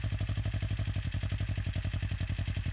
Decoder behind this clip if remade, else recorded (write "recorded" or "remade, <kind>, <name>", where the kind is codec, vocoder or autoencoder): recorded